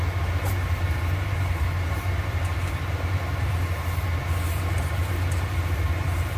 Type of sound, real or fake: fake